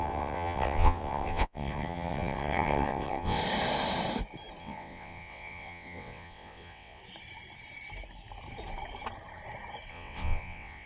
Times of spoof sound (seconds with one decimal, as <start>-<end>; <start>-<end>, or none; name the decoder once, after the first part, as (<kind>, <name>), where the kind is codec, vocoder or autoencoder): 0.0-3.4 (vocoder, WaveNeXt); 4.6-7.0; 9.9-10.9